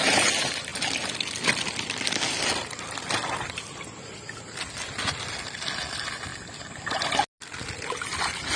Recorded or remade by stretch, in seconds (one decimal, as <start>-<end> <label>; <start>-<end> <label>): 0.0-8.6 recorded